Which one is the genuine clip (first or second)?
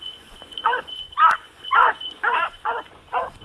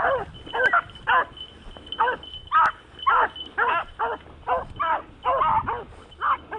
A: second